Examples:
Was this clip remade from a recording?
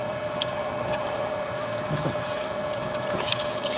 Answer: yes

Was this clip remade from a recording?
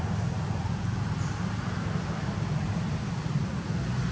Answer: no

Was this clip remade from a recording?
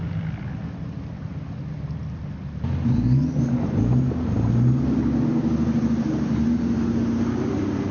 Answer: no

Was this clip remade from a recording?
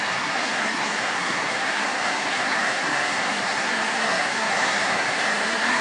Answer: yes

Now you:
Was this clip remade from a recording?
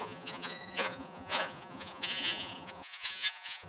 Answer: yes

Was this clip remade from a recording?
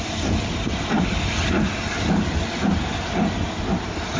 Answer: no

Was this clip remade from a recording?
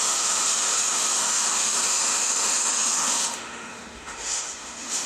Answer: yes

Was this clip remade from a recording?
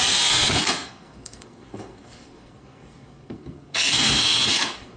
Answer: yes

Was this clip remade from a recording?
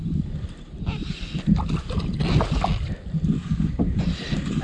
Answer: no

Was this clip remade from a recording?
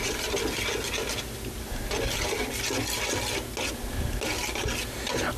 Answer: no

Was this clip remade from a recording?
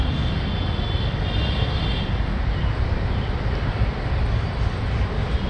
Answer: no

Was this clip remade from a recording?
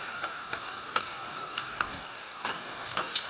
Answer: yes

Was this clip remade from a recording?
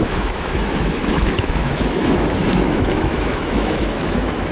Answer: yes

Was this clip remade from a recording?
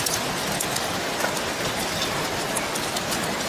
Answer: no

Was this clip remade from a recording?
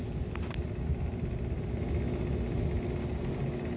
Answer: no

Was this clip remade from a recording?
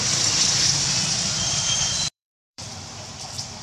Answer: yes